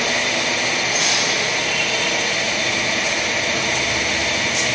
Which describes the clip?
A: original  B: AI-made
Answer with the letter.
A